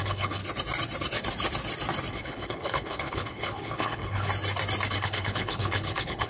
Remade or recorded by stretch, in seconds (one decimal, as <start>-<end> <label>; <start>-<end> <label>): 0.0-0.4 remade; 0.4-2.1 recorded; 2.1-4.3 remade; 4.3-4.9 recorded; 4.9-6.3 remade